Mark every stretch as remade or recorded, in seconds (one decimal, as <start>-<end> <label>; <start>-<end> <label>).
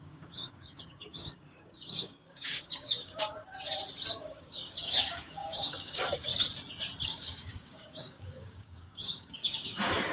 0.0-3.4 remade; 3.4-4.1 recorded; 4.1-6.3 remade; 6.3-7.1 recorded; 7.1-10.1 remade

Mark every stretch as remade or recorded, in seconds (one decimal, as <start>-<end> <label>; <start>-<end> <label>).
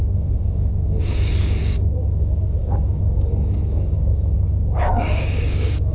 0.0-5.9 remade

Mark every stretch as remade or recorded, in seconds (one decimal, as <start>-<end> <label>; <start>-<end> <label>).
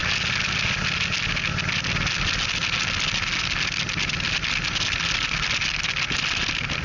0.0-6.8 recorded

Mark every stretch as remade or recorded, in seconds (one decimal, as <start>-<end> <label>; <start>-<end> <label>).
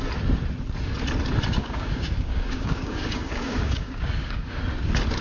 0.0-1.6 recorded; 1.6-4.6 remade; 4.6-5.2 recorded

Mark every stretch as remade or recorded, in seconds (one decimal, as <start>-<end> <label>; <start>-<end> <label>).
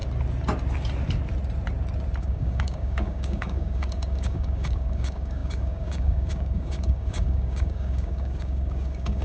0.0-2.2 recorded; 2.2-9.2 remade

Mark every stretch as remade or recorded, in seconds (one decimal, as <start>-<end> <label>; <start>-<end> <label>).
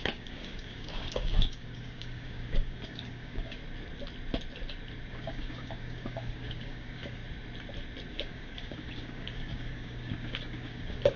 0.0-3.6 remade; 3.6-5.1 recorded; 5.1-7.2 remade; 7.2-8.1 recorded; 8.1-11.2 remade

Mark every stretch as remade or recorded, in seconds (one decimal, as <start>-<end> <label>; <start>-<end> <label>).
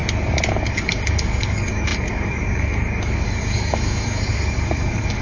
0.0-0.5 recorded; 0.5-5.2 remade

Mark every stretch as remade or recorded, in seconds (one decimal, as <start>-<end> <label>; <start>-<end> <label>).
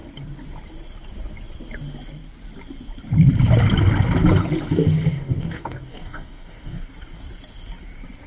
0.0-5.1 recorded; 5.1-6.9 remade; 6.9-8.3 recorded